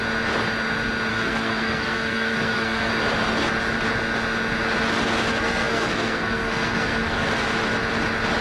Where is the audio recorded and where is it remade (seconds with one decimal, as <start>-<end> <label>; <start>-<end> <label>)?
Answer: 0.0-1.1 recorded; 1.1-2.9 remade; 2.9-5.3 recorded; 5.3-7.3 remade; 7.3-8.4 recorded